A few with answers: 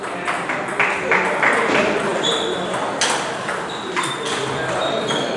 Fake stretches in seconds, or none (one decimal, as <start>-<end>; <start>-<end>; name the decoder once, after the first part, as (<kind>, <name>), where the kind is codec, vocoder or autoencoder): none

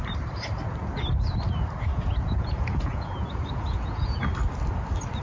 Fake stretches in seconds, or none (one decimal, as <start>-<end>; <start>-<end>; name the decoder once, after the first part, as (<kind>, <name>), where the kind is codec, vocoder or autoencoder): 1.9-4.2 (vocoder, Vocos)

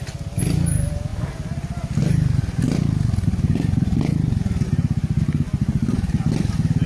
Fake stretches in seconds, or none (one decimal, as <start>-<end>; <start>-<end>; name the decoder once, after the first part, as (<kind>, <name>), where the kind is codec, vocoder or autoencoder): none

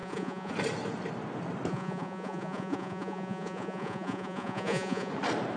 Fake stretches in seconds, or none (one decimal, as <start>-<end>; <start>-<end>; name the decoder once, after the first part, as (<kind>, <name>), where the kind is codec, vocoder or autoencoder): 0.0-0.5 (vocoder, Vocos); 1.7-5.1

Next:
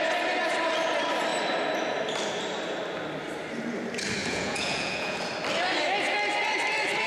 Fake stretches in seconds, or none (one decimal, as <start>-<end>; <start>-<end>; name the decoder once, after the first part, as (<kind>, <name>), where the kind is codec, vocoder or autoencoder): 4.2-5.2 (vocoder, Vocos)

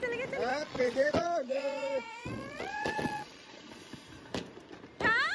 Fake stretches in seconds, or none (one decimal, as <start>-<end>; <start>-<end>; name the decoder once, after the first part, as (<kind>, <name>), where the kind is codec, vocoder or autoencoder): 0.5-3.7 (vocoder, Vocos)